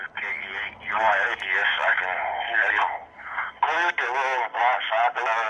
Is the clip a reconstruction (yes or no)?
no